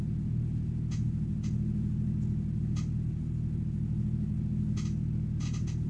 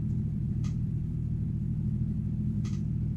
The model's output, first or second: second